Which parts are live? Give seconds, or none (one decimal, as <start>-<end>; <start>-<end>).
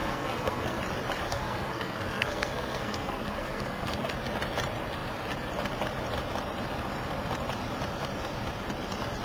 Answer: 0.8-1.3; 4.1-9.2